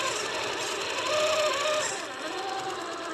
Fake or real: real